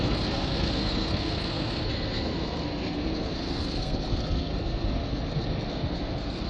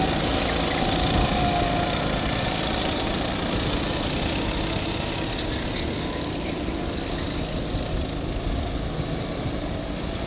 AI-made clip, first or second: first